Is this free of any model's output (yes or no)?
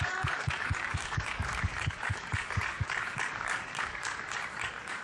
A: no